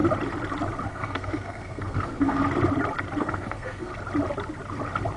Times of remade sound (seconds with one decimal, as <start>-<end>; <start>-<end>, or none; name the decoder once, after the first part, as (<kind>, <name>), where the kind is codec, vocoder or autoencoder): 0.9-2.4 (codec, SNAC); 3.2-3.9